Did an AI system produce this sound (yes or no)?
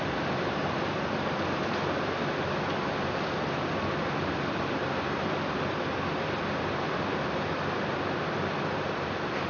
yes